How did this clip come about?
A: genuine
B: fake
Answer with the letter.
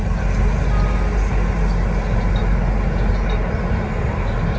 A